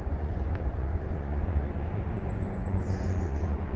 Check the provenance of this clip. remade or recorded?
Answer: remade